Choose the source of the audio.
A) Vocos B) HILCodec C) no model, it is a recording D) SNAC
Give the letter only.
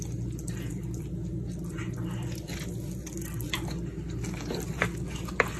C